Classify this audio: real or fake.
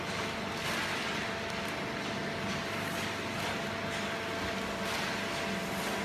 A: real